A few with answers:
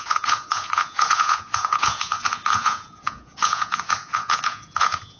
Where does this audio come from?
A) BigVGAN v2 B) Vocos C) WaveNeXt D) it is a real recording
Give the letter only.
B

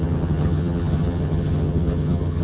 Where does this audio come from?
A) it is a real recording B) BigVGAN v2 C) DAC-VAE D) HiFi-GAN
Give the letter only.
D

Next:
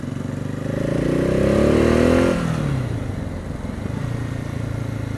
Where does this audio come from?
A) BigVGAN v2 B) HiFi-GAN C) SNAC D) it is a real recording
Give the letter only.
D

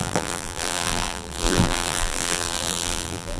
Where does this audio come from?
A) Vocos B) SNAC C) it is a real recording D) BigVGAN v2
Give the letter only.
D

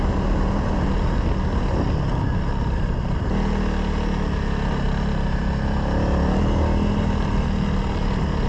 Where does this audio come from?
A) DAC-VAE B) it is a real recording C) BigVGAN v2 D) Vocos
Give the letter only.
B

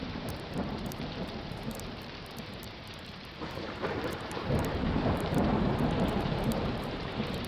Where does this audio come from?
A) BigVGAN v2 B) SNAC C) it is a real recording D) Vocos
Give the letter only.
A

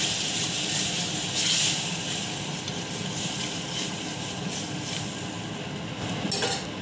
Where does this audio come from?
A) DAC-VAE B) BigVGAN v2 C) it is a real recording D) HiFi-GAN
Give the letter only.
C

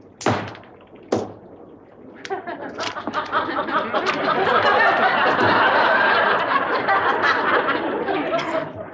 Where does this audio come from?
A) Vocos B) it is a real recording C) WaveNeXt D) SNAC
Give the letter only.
B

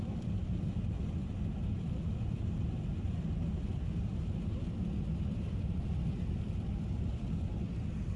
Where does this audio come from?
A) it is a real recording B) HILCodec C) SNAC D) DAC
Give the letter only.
A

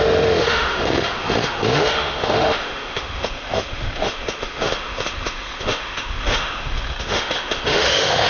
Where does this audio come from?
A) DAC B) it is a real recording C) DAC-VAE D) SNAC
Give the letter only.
C